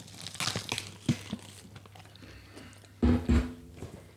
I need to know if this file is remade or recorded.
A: recorded